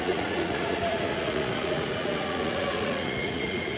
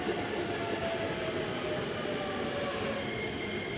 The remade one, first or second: first